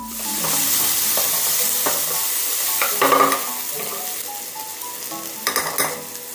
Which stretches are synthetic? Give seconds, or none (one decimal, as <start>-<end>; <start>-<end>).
0.0-2.9